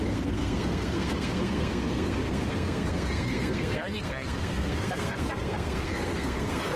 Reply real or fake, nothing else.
fake